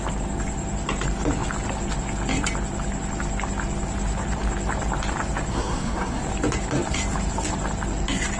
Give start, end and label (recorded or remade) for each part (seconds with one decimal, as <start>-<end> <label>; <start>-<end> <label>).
0.0-5.5 recorded; 5.5-6.2 remade; 6.2-8.4 recorded

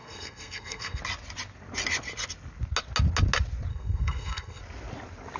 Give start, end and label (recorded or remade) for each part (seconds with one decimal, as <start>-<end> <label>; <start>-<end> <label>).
0.0-1.0 remade; 1.0-3.7 recorded; 3.7-4.6 remade; 4.6-5.4 recorded